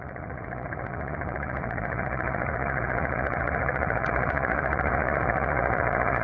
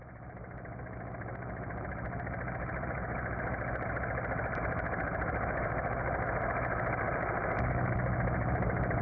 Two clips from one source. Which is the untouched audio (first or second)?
second